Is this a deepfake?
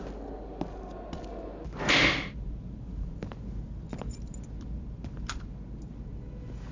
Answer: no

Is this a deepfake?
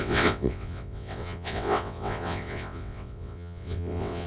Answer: yes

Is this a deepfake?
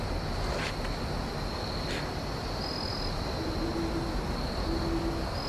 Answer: no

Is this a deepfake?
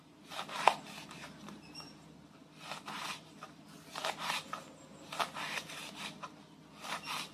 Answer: no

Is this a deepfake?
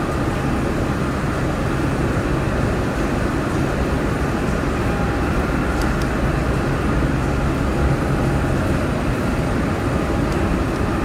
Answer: no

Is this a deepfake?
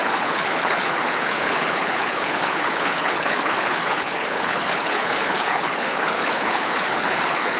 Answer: yes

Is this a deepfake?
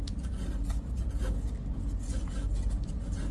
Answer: no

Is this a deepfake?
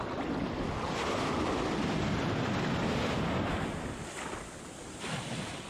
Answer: no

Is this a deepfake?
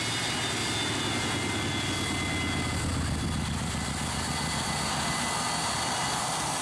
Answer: no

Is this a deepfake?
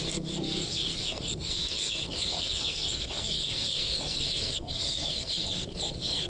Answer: yes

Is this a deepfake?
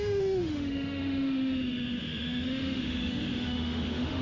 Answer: yes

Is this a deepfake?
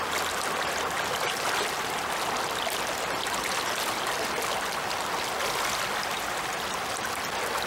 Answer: no